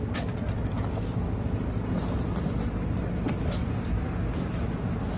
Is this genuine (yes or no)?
yes